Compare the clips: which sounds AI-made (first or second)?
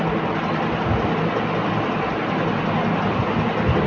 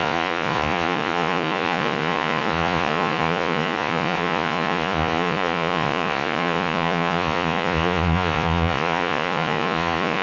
second